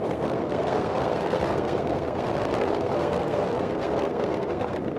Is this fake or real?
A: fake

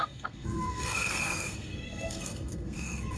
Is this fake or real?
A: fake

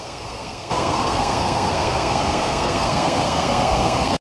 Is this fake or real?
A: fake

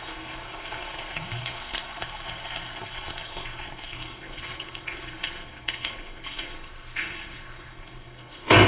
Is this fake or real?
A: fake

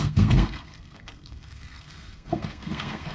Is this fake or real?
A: fake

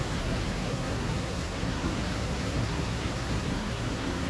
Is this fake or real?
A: fake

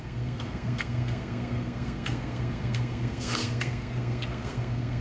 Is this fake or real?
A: fake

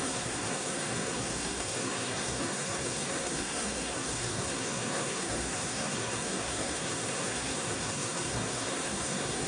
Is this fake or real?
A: fake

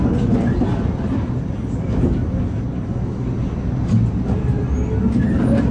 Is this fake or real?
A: real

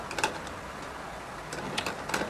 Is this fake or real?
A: real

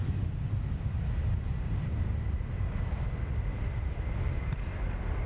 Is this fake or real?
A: real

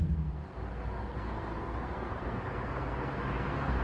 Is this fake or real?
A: fake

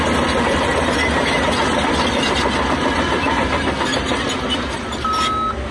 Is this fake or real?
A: real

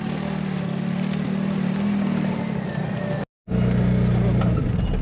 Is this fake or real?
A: real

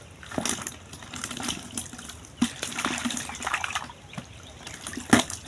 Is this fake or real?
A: real